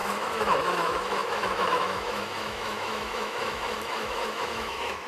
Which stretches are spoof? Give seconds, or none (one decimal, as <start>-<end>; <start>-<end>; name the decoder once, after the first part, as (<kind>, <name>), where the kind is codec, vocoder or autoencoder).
0.0-5.1 (autoencoder, DAC-VAE)